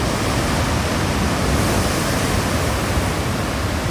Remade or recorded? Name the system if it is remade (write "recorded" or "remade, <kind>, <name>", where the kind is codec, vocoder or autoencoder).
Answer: recorded